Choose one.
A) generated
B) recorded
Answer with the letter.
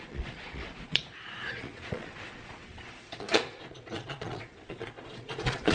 A